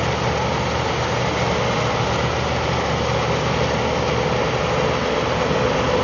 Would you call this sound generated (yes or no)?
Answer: no